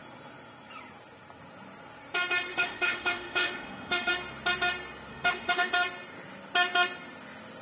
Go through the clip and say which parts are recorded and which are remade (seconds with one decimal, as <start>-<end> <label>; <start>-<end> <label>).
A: 0.0-2.5 recorded; 2.5-4.1 remade; 4.1-5.1 recorded; 5.1-5.7 remade; 5.7-7.6 recorded